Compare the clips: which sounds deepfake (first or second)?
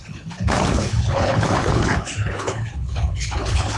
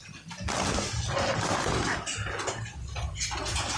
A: first